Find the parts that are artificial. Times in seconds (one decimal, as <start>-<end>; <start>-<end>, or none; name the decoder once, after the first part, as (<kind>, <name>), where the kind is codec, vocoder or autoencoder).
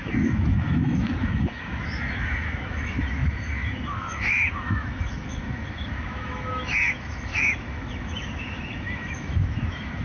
0.0-10.0 (autoencoder, DAC-VAE)